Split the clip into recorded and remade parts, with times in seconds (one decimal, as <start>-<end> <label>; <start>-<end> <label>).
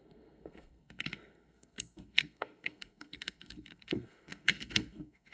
0.0-5.3 remade